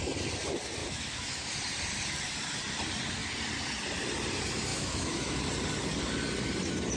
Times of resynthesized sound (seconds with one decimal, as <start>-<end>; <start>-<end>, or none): 0.8-1.5; 4.7-5.4